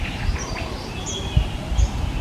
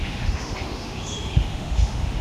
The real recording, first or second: first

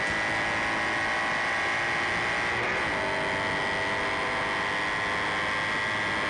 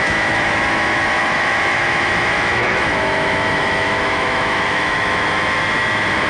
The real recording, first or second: first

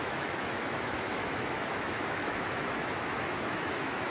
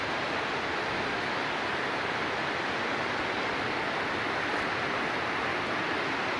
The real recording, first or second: second